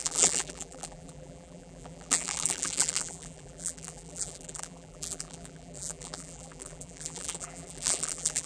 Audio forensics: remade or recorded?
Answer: remade